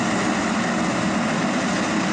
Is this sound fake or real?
real